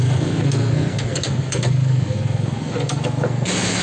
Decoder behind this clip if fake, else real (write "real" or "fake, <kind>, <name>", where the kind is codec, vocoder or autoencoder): fake, codec, SNAC